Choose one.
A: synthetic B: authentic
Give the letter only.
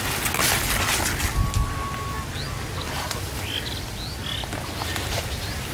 B